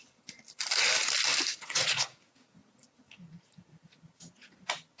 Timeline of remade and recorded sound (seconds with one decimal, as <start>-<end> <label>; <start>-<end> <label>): 0.0-1.6 recorded; 1.6-4.6 remade; 4.6-5.0 recorded